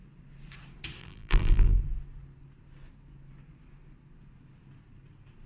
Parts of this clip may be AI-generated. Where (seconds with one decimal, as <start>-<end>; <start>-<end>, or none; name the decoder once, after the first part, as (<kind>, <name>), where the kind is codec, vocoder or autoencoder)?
1.0-1.8 (vocoder, BigVGAN v2)